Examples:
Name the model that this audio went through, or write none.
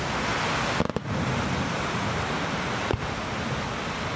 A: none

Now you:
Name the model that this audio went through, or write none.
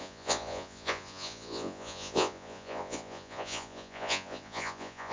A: vocoder, Vocos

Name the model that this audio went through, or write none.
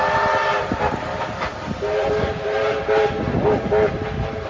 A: none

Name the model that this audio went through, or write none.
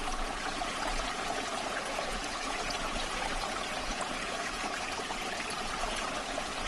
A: vocoder, Vocos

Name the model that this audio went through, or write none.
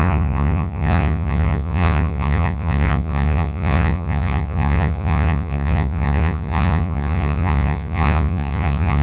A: vocoder, Vocos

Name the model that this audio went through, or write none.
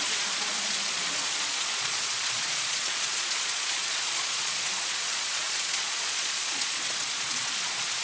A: vocoder, Vocos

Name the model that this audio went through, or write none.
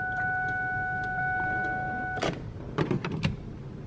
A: none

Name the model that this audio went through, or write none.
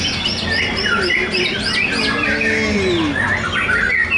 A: none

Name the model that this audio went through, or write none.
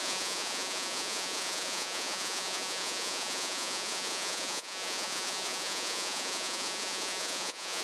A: vocoder, Vocos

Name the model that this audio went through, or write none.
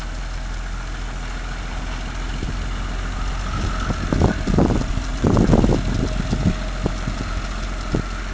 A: none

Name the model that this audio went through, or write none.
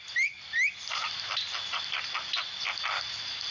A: none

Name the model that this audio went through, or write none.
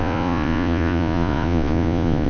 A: vocoder, Vocos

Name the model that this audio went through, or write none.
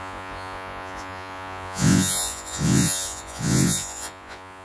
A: vocoder, Vocos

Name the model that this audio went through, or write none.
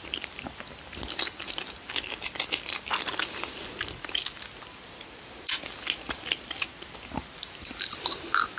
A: none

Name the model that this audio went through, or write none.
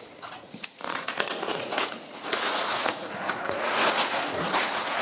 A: vocoder, Vocos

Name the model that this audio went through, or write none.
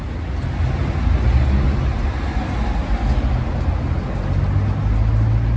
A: none